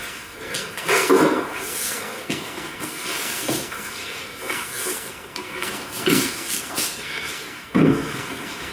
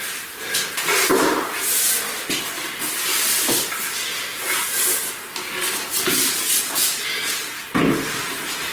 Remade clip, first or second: first